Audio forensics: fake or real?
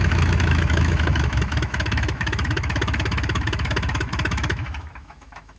fake